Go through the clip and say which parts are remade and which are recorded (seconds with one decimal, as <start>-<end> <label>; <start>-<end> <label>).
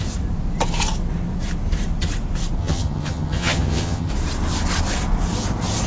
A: 0.0-2.6 recorded; 2.6-4.1 remade; 4.1-5.9 recorded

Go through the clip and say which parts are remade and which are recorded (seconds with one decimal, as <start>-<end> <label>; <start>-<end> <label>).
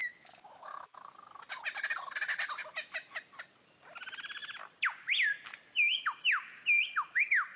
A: 0.0-1.1 remade; 1.1-2.6 recorded; 2.6-3.2 remade; 3.2-7.6 recorded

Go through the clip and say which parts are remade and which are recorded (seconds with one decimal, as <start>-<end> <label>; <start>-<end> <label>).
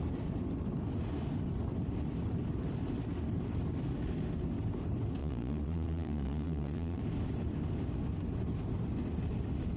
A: 0.0-5.2 recorded; 5.2-7.0 remade; 7.0-9.8 recorded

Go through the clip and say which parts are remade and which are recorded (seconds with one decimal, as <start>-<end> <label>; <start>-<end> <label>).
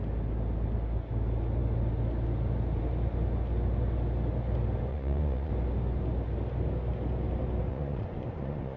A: 0.0-4.9 recorded; 4.9-5.5 remade; 5.5-7.7 recorded; 7.7-8.8 remade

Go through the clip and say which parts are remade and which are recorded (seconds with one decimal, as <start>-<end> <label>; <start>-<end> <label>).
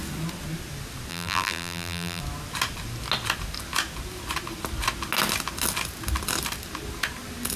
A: 0.0-1.1 recorded; 1.1-2.2 remade; 2.2-7.6 recorded